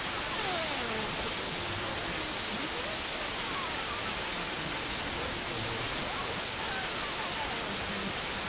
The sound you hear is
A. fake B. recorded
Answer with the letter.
B